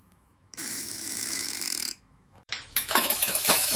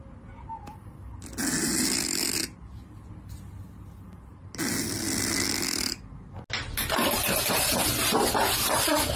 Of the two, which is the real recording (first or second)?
second